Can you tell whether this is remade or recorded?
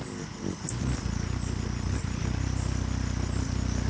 recorded